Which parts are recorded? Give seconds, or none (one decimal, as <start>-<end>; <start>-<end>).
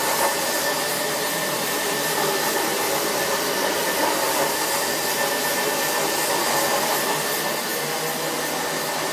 0.0-0.9; 5.1-9.1